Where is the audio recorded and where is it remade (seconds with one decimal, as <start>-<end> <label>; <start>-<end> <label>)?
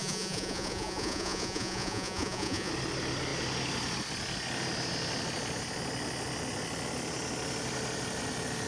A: 0.0-2.7 remade; 2.7-8.7 recorded